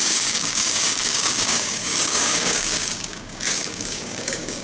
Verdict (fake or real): fake